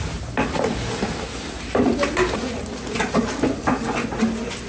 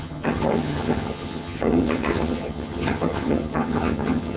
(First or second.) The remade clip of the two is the second